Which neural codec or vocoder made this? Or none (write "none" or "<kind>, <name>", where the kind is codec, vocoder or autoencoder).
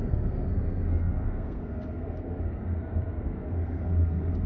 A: codec, SNAC